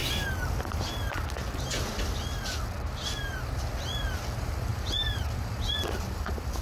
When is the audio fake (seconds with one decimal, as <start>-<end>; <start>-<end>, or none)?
none